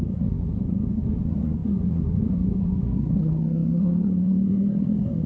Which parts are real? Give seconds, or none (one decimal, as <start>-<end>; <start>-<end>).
none